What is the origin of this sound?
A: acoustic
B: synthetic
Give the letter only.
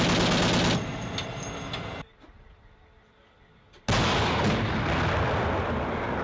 A